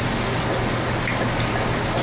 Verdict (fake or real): real